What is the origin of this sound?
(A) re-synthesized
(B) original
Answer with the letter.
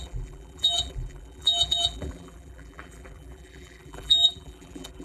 A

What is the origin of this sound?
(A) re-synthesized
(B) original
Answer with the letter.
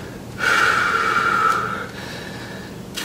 B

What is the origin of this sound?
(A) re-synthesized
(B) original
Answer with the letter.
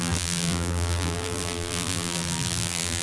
A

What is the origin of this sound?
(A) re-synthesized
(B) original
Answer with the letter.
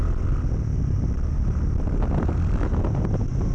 B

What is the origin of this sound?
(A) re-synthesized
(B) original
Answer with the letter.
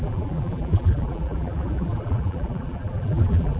A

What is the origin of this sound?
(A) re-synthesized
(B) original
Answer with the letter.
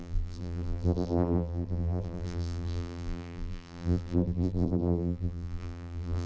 A